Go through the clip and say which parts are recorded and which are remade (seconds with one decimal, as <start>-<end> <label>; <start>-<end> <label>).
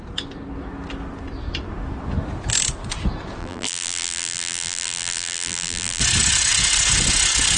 0.0-3.4 recorded; 3.4-6.0 remade; 6.0-7.6 recorded